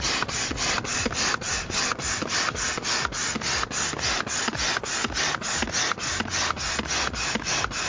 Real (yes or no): yes